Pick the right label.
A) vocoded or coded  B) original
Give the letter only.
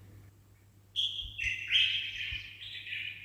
B